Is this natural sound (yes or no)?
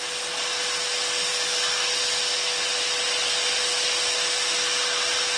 yes